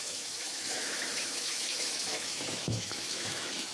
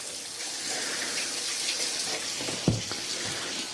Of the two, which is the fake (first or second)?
first